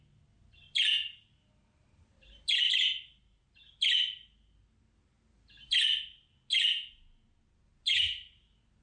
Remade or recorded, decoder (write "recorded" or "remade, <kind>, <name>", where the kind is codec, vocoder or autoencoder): recorded